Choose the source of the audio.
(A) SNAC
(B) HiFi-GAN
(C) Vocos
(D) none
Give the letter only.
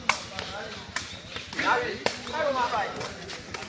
D